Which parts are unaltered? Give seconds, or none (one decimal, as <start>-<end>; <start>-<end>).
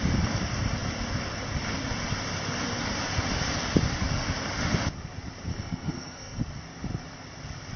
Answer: 0.0-5.5; 6.4-7.8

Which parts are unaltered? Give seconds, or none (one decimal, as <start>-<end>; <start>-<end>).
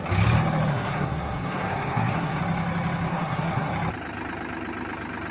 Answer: 0.0-0.7; 2.4-3.1; 3.7-5.3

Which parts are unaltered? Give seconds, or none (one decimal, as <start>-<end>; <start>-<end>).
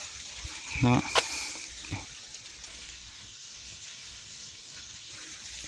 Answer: 0.0-2.7; 5.1-5.7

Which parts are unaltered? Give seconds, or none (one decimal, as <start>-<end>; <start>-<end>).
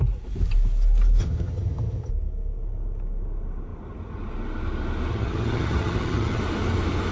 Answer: 0.0-1.2; 2.1-5.1; 6.4-7.1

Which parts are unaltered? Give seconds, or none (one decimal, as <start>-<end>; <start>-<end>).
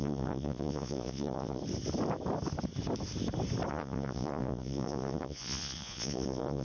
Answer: 1.6-3.7